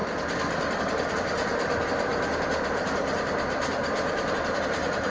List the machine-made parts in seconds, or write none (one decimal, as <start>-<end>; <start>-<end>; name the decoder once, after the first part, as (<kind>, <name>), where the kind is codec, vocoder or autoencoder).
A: 0.8-5.1 (vocoder, BigVGAN v2)